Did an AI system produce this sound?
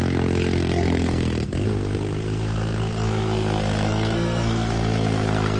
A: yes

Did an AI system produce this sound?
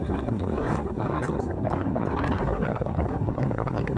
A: yes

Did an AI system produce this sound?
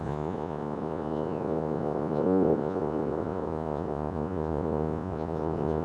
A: yes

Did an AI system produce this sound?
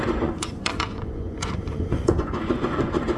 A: yes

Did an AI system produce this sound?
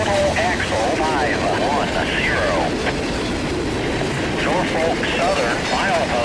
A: no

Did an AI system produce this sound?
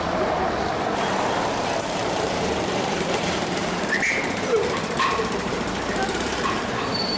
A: yes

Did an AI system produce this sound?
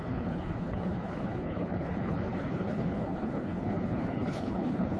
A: yes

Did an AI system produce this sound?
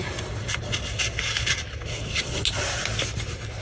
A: no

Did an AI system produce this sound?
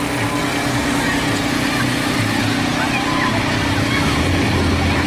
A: no